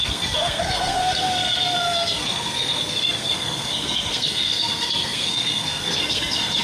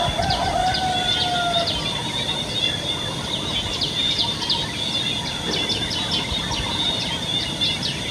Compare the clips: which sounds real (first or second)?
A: second